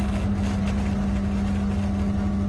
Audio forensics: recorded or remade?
recorded